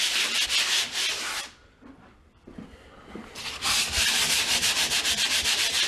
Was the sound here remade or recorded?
remade